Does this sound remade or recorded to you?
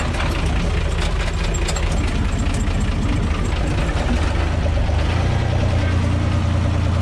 recorded